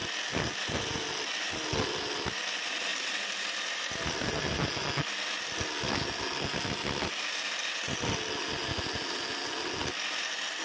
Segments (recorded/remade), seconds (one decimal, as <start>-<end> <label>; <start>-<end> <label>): 0.0-10.6 recorded